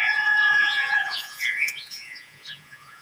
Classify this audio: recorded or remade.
remade